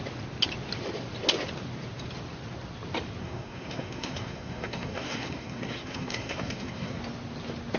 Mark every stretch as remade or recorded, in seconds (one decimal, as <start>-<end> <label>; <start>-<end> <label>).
0.0-3.2 recorded; 3.2-7.0 remade; 7.0-7.8 recorded